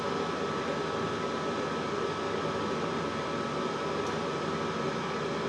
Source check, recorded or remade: recorded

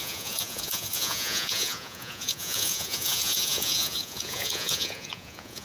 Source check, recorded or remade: remade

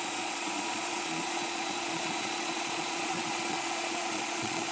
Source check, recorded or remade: remade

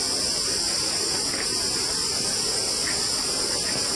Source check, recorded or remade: recorded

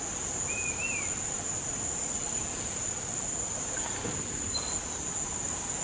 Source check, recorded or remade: recorded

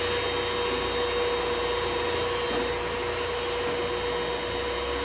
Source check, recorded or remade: recorded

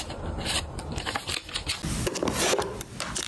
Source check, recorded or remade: recorded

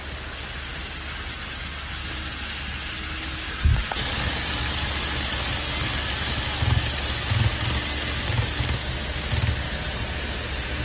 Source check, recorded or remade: recorded